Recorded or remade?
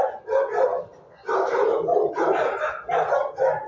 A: recorded